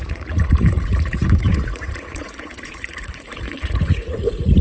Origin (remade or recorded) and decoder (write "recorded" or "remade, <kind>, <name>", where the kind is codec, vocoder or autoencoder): remade, vocoder, Vocos